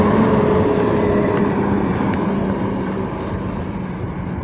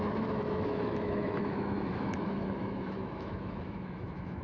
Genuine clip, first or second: first